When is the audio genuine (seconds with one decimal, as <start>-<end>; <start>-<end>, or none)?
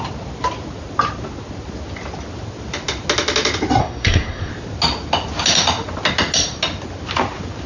0.0-3.8; 4.5-7.7